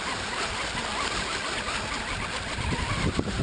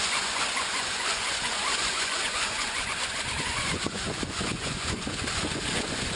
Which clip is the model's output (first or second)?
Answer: second